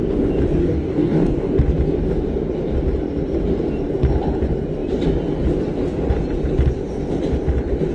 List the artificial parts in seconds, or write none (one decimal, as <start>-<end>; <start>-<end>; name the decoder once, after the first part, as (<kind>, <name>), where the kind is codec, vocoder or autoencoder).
0.6-1.5 (codec, DAC)